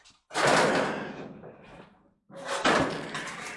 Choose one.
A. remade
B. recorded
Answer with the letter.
B